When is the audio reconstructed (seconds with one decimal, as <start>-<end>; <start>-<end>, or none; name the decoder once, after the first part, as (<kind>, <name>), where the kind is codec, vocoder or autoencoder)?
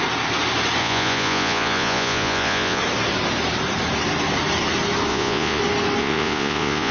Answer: 0.8-2.8 (vocoder, Vocos); 5.1-5.6; 6.0-6.9